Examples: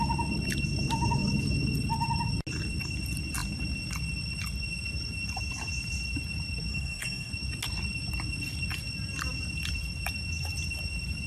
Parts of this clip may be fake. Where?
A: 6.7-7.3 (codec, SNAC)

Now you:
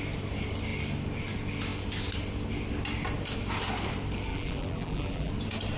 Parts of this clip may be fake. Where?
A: 4.3-5.3 (vocoder, BigVGAN v2)

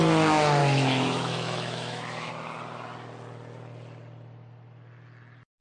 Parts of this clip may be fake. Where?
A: 0.6-2.3 (autoencoder, DAC-VAE)

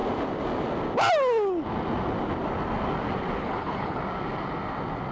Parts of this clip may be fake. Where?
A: 3.4-4.0 (codec, HILCodec)